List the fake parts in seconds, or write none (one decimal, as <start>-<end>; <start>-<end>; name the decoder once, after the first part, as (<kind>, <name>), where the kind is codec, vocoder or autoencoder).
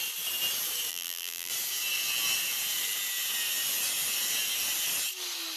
0.9-1.5 (vocoder, BigVGAN v2)